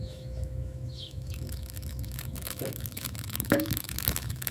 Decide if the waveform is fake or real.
fake